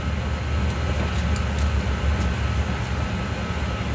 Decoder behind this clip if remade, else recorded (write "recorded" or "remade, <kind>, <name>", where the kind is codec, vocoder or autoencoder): recorded